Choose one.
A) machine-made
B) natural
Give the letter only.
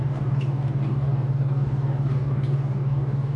A